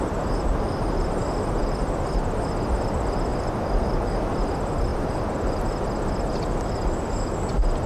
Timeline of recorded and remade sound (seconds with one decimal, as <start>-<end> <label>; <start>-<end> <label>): 0.0-1.6 recorded; 1.6-2.2 remade; 2.2-4.9 recorded; 4.9-7.1 remade; 7.1-7.9 recorded